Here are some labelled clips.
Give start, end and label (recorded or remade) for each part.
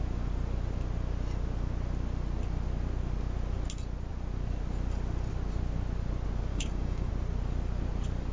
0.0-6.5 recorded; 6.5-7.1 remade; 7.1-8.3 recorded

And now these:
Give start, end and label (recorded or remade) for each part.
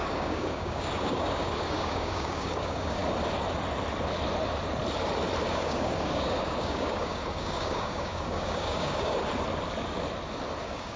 0.0-3.0 remade; 3.0-5.5 recorded; 5.5-9.2 remade; 9.2-10.6 recorded; 10.6-11.0 remade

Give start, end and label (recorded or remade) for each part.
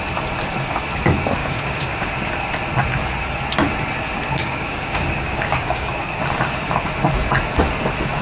0.0-1.4 recorded; 1.4-2.1 remade; 2.1-4.4 recorded; 4.4-6.2 remade; 6.2-8.2 recorded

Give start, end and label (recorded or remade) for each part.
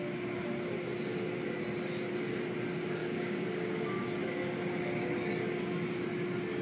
0.0-3.0 recorded; 3.0-4.0 remade; 4.0-6.6 recorded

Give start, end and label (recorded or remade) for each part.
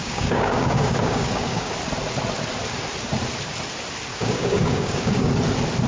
0.0-1.7 remade; 1.7-4.1 recorded; 4.1-5.3 remade; 5.3-5.9 recorded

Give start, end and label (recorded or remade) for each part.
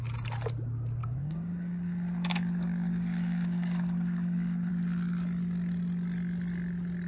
0.0-1.0 recorded; 1.0-4.7 remade; 4.7-7.1 recorded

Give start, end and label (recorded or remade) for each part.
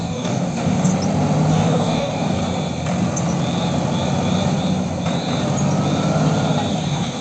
0.0-0.9 remade; 0.9-1.5 recorded; 1.5-2.4 remade; 2.4-6.7 recorded; 6.7-7.2 remade